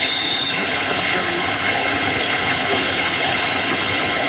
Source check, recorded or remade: remade